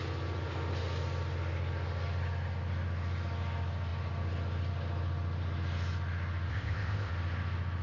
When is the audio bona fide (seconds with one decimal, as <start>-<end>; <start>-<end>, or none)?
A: 0.0-6.5; 7.1-7.8